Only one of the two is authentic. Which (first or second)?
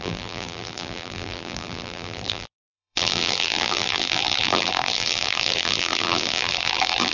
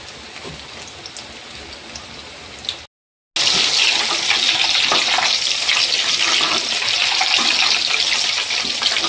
second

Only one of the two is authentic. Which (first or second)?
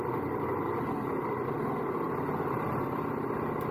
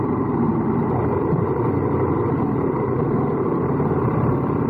first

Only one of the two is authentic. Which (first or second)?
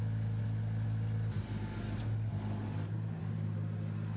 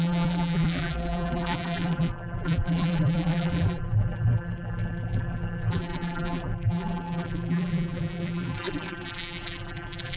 first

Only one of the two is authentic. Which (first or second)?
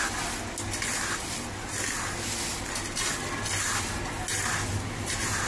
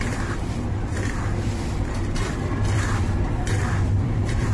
first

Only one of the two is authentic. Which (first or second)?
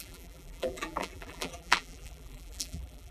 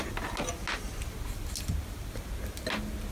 second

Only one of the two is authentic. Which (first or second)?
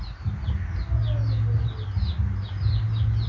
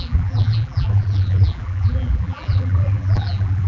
first